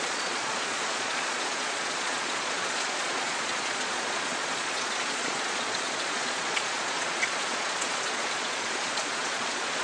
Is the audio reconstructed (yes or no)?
yes